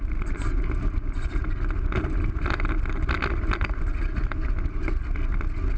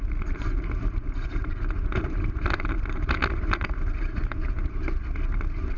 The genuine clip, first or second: first